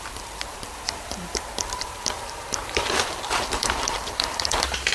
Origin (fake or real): fake